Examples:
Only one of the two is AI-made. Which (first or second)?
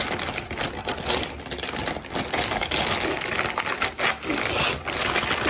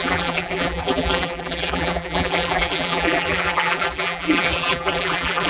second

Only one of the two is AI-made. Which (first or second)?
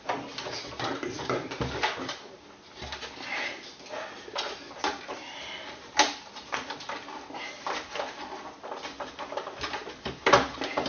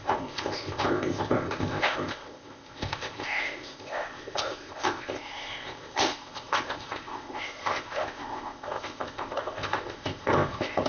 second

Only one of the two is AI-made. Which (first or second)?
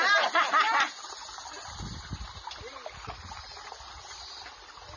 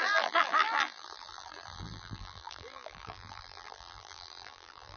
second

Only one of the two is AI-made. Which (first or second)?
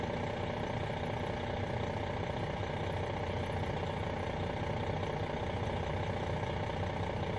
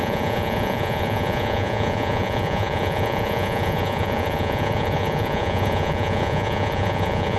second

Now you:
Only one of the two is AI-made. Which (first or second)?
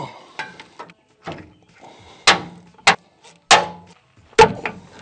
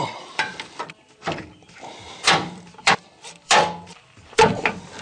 second